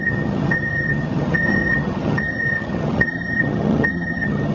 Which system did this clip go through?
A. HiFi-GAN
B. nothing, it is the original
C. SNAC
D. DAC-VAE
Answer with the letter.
A